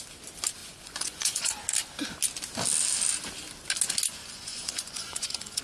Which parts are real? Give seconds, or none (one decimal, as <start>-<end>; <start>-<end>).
0.0-0.6; 1.6-4.1